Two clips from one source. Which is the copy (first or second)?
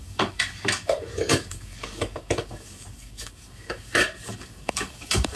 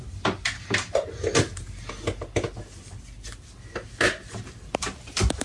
first